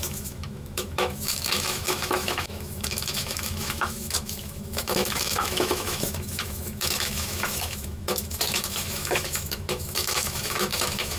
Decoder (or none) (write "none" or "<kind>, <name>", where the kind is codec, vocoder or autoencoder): autoencoder, DAC-VAE